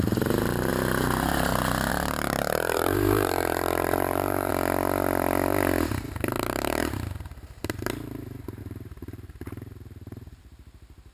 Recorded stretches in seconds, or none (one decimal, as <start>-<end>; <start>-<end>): 0.7-1.9; 4.5-6.1